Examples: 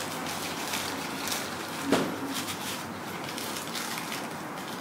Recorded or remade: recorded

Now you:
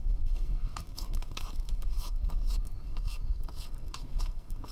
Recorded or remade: remade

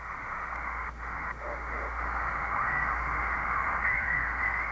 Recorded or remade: remade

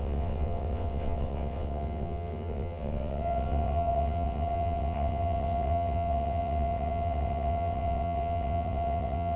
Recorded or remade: remade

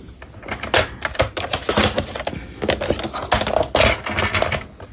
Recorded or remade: recorded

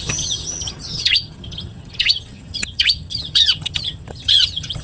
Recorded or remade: remade